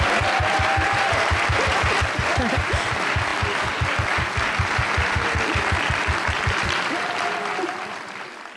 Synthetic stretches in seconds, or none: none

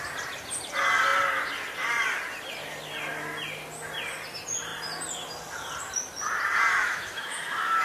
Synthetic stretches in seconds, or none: 6.7-7.8 (autoencoder, DAC-VAE)

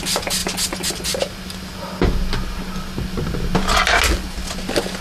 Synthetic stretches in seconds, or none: none

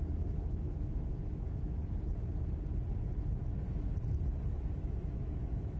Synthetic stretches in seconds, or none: 0.0-1.8 (autoencoder, DAC-VAE); 4.5-5.8